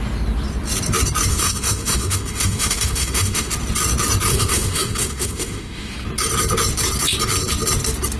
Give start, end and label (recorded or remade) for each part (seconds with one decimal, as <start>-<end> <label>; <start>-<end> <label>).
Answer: 0.0-1.3 recorded; 1.3-3.5 remade; 3.5-4.3 recorded; 4.3-5.9 remade; 5.9-8.2 recorded